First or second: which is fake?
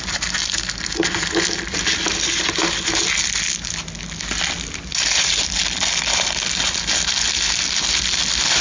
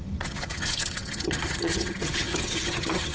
second